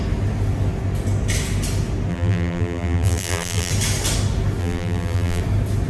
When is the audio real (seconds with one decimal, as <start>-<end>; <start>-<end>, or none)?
0.0-2.1; 3.7-4.6; 5.4-5.9